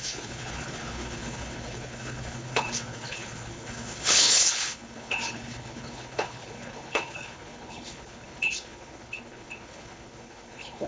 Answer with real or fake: fake